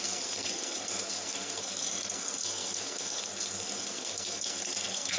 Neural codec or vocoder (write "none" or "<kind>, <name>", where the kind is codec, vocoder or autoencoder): codec, SNAC